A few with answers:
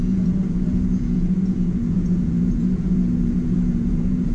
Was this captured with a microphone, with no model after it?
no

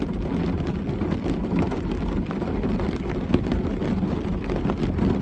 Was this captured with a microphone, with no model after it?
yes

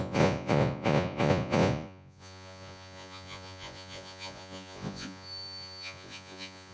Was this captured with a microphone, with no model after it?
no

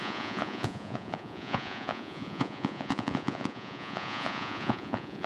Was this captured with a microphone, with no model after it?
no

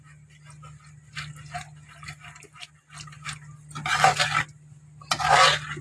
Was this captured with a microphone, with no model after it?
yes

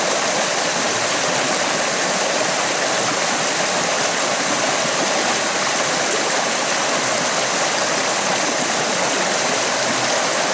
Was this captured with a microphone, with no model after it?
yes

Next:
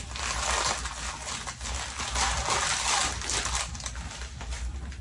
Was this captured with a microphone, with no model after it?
yes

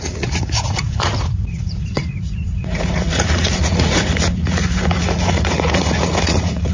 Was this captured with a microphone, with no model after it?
no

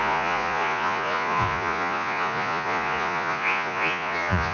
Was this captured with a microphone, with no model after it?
no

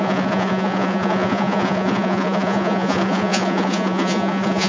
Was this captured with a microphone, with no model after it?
no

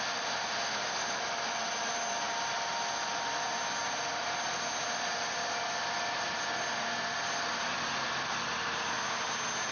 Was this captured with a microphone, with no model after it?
yes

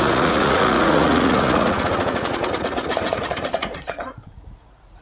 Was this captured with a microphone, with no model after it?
no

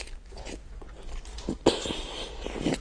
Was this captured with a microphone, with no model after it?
yes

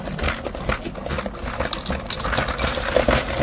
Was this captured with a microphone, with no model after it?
yes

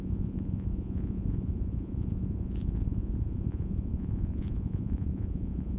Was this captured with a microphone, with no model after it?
no